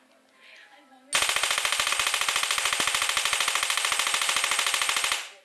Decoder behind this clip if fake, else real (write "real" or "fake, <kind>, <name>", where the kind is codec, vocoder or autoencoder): real